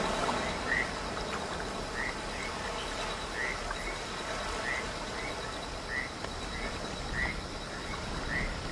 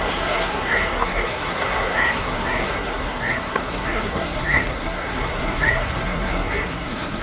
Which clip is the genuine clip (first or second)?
first